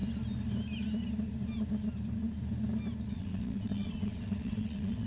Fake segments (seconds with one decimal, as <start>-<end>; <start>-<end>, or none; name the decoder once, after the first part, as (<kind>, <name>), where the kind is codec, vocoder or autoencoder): 3.1-5.1 (vocoder, WaveNeXt)